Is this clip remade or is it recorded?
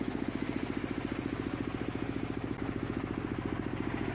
recorded